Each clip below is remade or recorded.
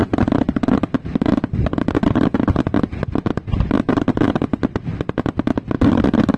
recorded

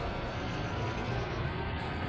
remade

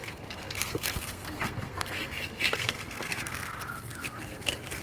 remade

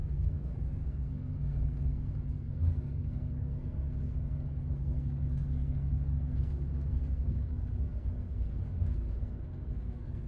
remade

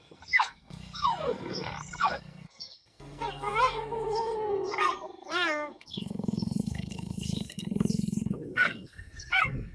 remade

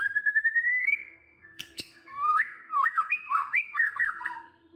remade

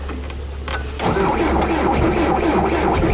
recorded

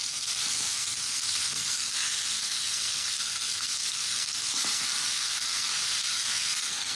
remade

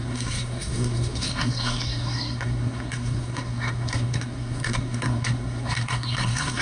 remade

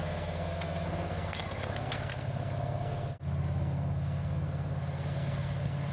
remade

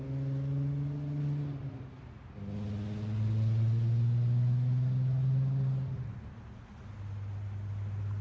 recorded